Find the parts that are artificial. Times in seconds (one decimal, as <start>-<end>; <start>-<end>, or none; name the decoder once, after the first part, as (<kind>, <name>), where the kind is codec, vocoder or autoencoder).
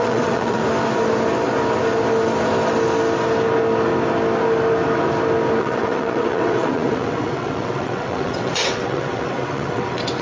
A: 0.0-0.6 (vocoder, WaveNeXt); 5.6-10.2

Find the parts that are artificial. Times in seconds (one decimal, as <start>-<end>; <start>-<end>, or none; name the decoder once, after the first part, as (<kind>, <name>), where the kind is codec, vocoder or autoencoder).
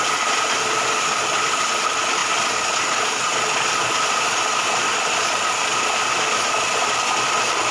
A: 0.0-2.2 (vocoder, BigVGAN v2); 4.1-7.7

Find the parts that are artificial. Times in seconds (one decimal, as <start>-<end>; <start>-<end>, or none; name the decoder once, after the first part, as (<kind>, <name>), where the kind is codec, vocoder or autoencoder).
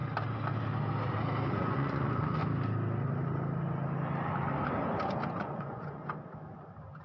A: 1.5-2.4 (vocoder, Vocos); 5.4-6.0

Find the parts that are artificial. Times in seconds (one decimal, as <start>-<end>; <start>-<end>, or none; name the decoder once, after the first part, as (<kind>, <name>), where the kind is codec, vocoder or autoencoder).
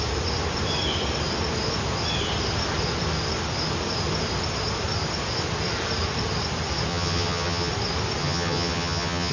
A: 6.9-7.7 (vocoder, HiFi-GAN); 8.2-9.3